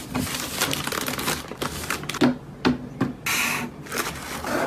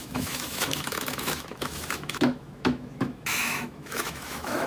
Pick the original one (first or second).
first